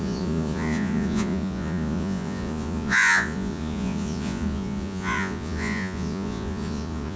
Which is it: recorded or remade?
remade